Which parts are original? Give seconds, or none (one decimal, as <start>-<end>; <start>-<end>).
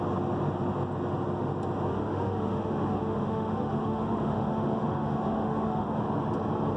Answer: 0.0-1.9; 6.0-6.8